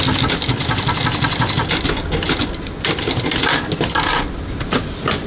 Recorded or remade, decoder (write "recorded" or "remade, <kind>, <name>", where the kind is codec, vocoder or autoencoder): recorded